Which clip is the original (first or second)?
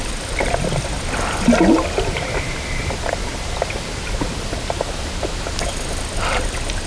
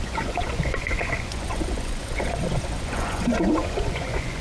first